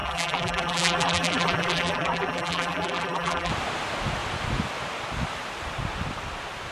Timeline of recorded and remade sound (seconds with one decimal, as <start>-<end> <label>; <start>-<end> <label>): 0.0-3.5 remade; 3.5-6.7 recorded